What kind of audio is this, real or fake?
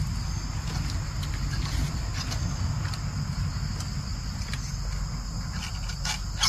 real